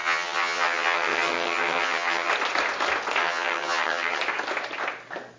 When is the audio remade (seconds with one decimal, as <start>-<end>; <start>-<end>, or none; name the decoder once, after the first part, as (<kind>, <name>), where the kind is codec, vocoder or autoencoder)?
0.0-2.3 (vocoder, HiFi-GAN); 3.2-4.2